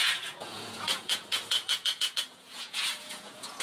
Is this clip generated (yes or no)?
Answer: yes